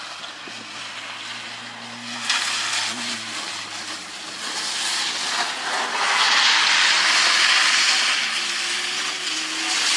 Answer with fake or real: real